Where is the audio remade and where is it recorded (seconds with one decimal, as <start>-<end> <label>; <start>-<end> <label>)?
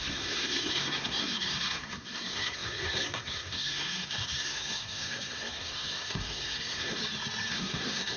0.0-7.0 remade; 7.0-7.5 recorded; 7.5-8.2 remade